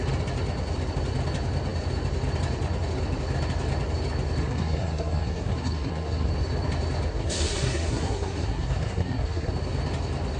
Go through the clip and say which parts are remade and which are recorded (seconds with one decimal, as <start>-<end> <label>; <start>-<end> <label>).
0.0-4.4 recorded; 4.4-6.3 remade; 6.3-7.1 recorded; 7.1-9.5 remade; 9.5-10.4 recorded